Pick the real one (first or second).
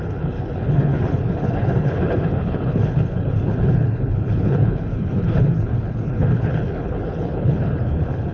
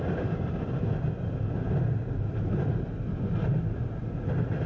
second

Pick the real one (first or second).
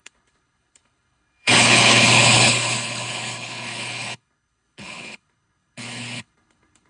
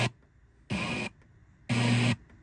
second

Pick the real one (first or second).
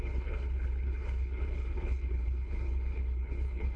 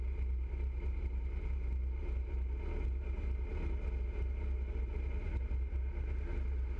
second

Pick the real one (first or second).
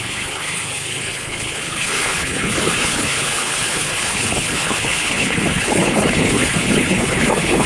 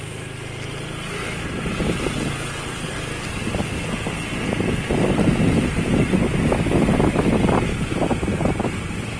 second